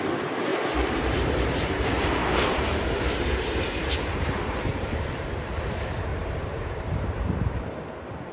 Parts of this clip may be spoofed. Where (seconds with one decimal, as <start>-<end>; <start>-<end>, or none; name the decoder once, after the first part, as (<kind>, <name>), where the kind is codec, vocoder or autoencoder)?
0.5-5.3 (vocoder, BigVGAN v2); 6.1-7.7